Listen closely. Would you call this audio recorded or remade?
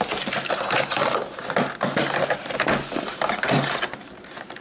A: recorded